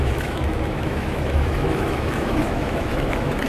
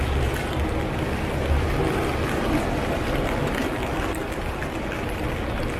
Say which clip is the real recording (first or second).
second